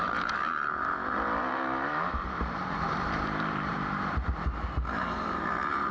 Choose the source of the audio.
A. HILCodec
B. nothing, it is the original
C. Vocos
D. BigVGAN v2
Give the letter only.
D